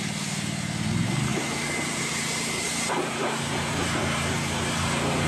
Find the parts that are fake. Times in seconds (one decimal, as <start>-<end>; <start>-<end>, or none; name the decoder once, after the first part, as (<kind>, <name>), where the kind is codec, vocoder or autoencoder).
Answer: none